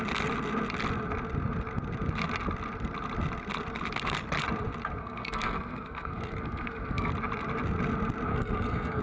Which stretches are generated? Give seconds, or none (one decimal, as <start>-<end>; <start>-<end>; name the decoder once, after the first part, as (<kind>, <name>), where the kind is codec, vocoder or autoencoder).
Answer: 5.0-7.1 (codec, SNAC); 8.3-9.0